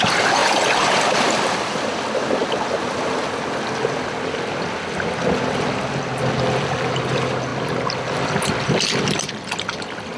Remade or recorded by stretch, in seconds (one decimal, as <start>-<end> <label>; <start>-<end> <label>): 0.0-10.2 recorded